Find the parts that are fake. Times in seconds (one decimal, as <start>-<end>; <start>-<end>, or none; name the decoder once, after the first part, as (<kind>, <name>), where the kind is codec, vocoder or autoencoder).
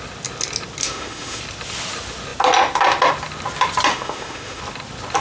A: 0.8-1.4 (autoencoder, DAC-VAE); 3.9-4.6